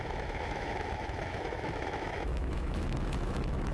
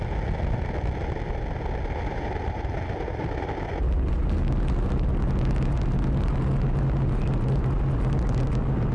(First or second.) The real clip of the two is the second